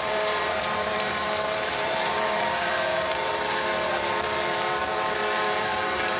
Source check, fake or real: fake